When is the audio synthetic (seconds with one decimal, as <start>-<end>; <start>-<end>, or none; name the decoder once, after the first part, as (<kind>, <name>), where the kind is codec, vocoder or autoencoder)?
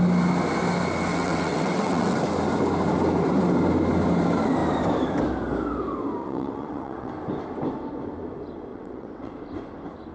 1.1-2.2 (vocoder, WaveNeXt); 6.2-7.1; 8.7-9.3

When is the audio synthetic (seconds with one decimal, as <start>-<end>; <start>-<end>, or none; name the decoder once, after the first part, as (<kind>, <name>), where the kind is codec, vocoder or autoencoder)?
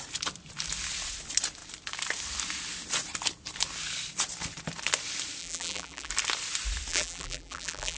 5.4-6.1 (vocoder, BigVGAN v2); 6.9-8.0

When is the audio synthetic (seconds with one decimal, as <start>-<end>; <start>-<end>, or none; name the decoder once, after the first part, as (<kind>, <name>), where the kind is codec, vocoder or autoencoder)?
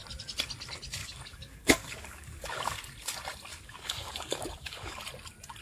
1.0-2.8 (codec, DAC); 3.5-5.0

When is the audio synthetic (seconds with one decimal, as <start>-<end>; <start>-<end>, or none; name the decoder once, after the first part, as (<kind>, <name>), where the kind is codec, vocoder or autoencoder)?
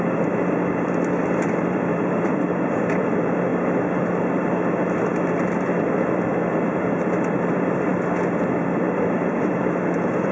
0.0-3.5 (vocoder, BigVGAN v2); 5.3-7.9; 8.6-10.3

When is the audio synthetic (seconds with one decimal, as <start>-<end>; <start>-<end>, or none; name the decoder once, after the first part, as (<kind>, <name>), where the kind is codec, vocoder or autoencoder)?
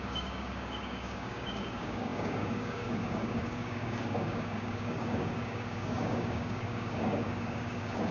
0.0-8.1 (codec, DAC)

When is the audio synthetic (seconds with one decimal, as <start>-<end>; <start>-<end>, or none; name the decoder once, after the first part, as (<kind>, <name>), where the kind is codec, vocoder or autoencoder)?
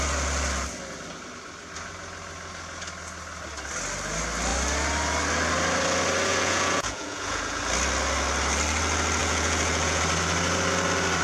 6.3-7.6 (vocoder, Vocos); 9.2-10.0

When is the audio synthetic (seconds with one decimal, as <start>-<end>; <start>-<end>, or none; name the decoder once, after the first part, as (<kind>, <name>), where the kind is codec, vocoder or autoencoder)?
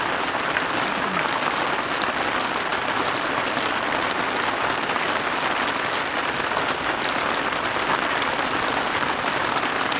none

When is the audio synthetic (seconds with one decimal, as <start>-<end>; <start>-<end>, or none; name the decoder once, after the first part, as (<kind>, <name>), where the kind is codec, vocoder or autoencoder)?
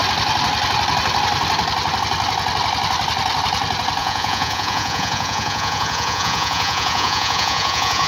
4.0-8.1 (vocoder, Vocos)